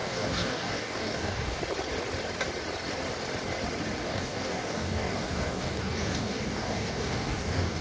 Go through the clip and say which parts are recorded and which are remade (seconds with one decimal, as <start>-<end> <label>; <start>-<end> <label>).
0.0-1.6 remade; 1.6-4.0 recorded; 4.0-7.8 remade